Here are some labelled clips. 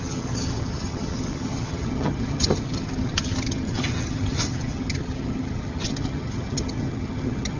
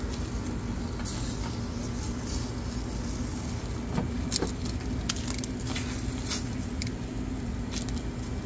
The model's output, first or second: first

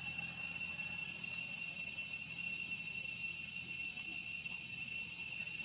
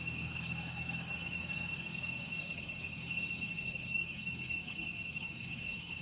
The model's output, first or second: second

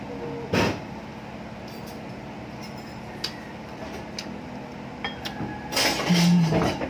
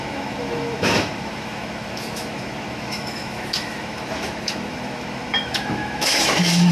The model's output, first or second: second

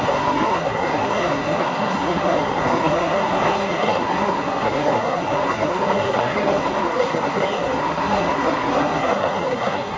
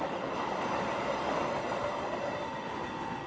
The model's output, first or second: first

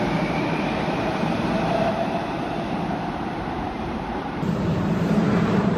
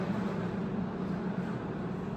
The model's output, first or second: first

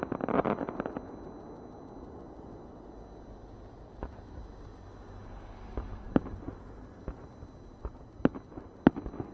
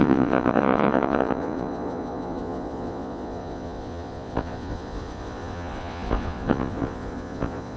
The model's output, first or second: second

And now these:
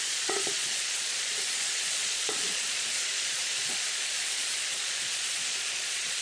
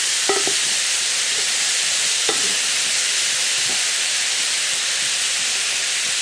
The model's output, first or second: first